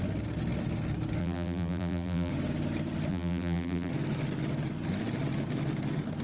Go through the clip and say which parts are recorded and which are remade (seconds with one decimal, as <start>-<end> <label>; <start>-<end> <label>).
0.0-1.2 recorded; 1.2-2.3 remade; 2.3-3.1 recorded; 3.1-3.9 remade; 3.9-6.2 recorded